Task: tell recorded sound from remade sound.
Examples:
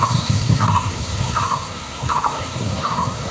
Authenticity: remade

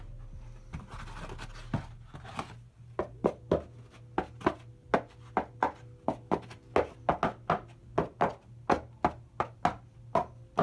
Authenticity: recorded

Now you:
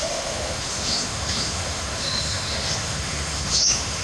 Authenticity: remade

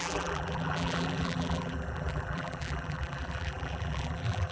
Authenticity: remade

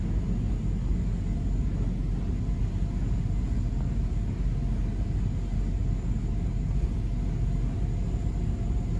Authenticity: recorded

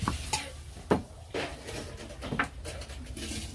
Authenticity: recorded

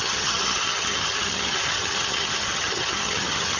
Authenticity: remade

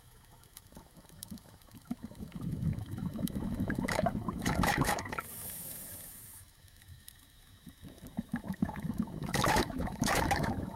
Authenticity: remade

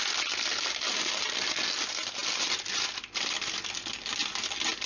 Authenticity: recorded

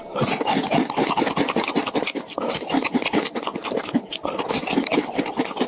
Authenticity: recorded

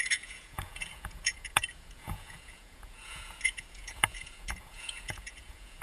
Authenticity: remade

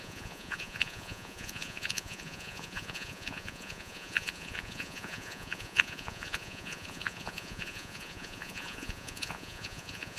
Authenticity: remade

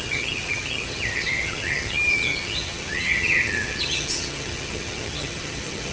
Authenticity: remade